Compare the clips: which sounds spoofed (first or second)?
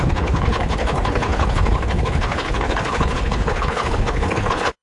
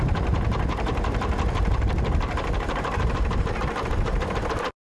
first